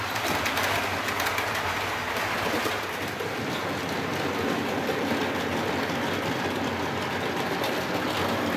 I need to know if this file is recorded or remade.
recorded